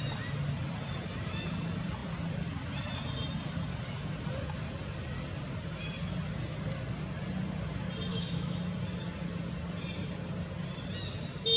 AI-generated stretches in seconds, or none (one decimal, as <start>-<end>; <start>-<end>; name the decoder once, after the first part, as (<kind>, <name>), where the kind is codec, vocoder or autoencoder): 8.1-8.6 (autoencoder, DAC-VAE)